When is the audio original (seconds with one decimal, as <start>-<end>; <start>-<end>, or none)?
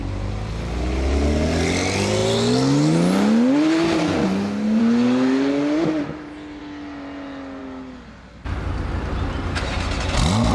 0.0-10.5